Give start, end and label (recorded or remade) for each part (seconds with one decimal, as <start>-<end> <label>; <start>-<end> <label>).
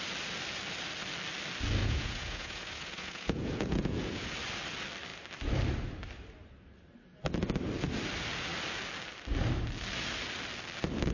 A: 0.0-1.8 recorded; 1.8-4.3 remade; 4.3-11.1 recorded